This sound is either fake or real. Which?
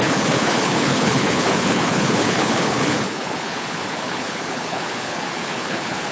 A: fake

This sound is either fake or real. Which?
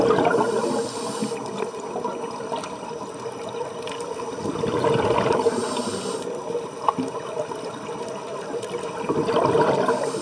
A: real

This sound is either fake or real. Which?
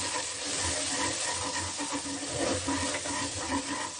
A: real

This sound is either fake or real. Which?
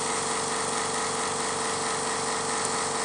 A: real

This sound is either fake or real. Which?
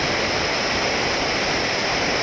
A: real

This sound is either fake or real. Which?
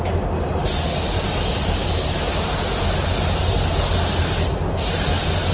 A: real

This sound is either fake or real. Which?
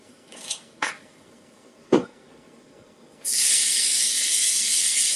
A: fake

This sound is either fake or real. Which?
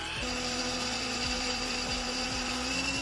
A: fake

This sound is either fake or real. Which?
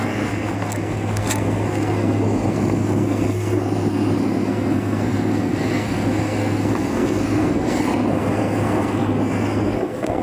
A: fake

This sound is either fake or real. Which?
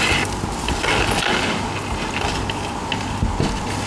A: real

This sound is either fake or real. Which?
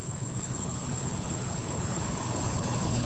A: fake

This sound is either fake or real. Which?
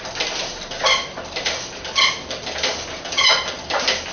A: real